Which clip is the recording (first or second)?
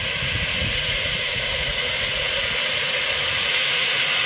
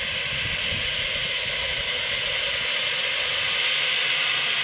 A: second